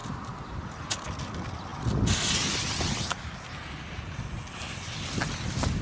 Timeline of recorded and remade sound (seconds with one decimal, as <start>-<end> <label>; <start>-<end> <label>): 0.0-0.6 remade; 0.6-5.8 recorded